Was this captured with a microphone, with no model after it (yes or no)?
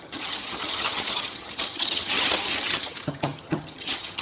no